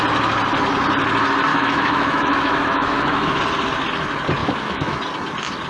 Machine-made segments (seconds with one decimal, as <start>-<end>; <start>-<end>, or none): 1.5-3.4; 4.4-5.0